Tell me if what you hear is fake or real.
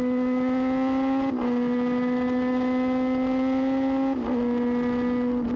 real